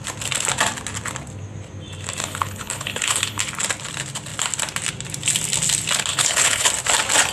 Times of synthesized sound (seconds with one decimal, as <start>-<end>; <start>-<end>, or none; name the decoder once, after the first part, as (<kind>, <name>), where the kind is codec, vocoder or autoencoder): 2.2-3.4 (codec, HILCodec); 6.1-6.7